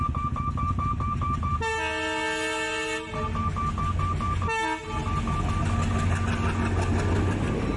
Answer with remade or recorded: recorded